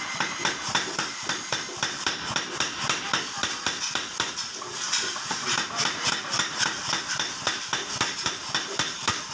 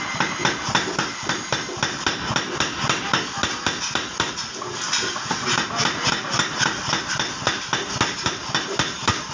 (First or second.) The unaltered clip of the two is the second